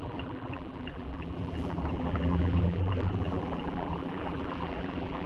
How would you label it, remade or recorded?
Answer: remade